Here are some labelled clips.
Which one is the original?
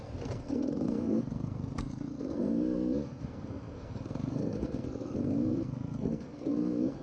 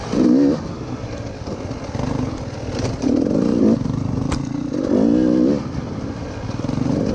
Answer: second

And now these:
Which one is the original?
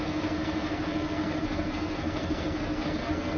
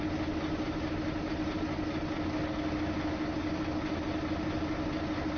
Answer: second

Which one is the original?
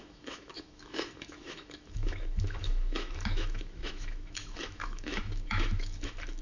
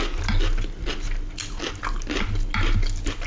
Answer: second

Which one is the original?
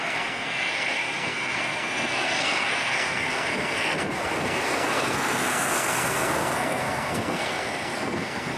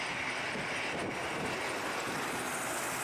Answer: second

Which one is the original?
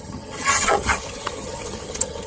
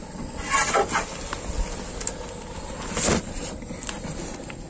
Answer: second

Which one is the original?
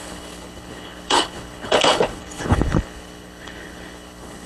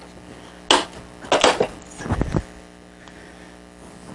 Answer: second